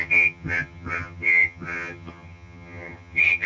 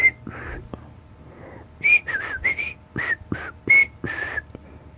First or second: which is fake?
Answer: first